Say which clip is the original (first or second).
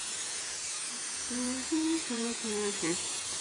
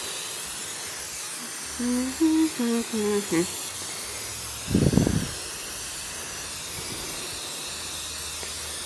second